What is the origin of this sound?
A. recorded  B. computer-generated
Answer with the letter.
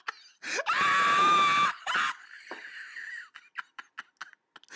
A